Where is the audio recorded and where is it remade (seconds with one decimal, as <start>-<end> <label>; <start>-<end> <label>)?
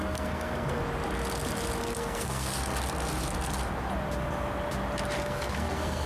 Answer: 0.0-0.8 remade; 0.8-1.8 recorded; 1.8-2.5 remade; 2.5-5.2 recorded; 5.2-6.1 remade